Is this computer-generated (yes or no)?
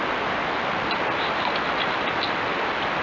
no